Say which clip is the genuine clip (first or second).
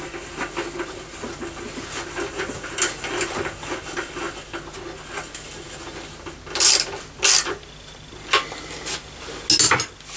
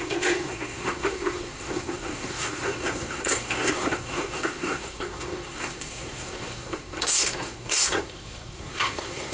first